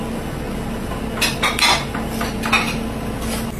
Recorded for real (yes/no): yes